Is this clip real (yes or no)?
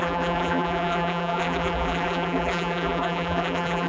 no